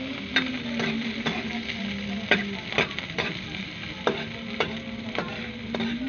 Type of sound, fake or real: real